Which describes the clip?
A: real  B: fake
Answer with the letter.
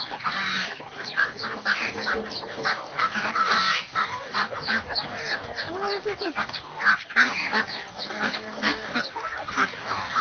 B